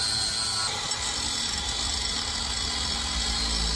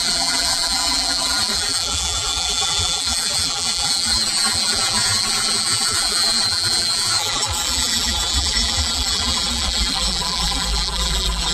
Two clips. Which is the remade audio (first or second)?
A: second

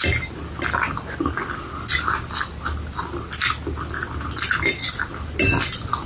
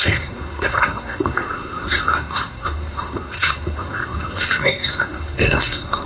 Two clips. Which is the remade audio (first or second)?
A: second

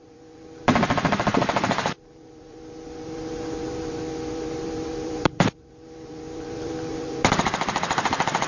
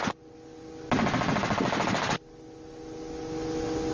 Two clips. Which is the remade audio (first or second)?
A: first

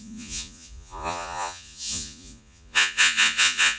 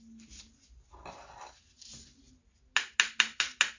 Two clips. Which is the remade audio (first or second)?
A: first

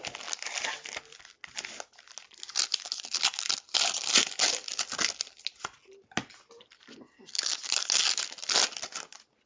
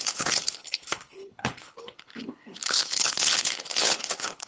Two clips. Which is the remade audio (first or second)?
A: second